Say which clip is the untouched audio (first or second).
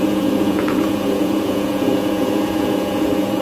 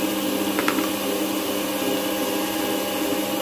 second